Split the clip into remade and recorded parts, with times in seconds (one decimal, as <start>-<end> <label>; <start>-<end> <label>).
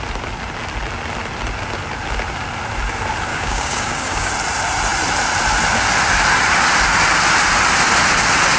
0.0-3.3 recorded; 3.3-4.3 remade; 4.3-8.6 recorded